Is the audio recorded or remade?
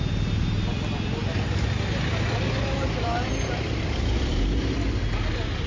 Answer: recorded